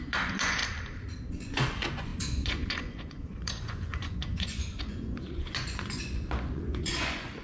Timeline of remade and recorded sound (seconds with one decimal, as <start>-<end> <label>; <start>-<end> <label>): 0.0-0.6 remade; 0.6-1.3 recorded; 1.3-7.4 remade